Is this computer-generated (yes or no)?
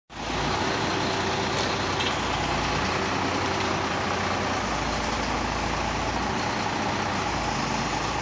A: no